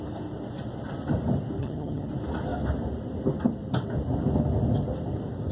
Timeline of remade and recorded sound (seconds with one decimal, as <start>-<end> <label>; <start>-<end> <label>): 0.0-1.6 recorded; 1.6-2.1 remade; 2.1-5.5 recorded